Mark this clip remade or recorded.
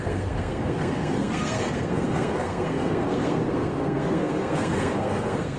remade